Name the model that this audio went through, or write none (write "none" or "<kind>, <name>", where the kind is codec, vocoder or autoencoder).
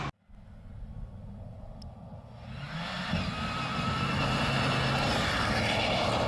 none